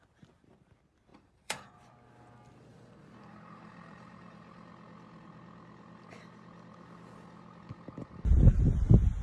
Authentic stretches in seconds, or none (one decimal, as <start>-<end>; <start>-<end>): 0.0-1.1; 1.7-2.7; 4.7-9.2